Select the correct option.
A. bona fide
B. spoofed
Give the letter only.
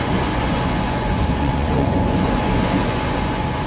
B